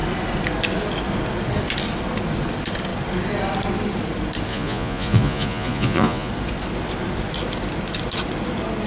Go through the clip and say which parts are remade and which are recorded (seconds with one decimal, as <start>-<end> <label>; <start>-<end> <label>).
0.0-4.5 recorded; 4.5-6.3 remade; 6.3-8.9 recorded